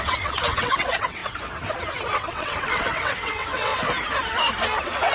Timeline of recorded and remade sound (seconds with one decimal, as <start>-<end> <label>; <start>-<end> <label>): 0.0-1.2 remade; 1.2-2.3 recorded; 2.3-3.7 remade; 3.7-5.1 recorded